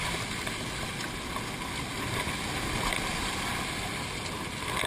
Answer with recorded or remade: recorded